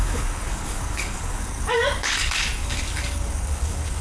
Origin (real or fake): fake